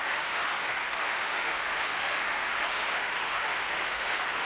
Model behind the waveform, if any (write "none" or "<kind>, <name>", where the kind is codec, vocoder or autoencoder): autoencoder, DAC-VAE